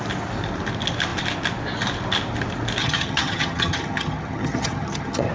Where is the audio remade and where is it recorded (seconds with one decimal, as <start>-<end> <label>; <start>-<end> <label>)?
0.0-2.8 recorded; 2.8-5.3 remade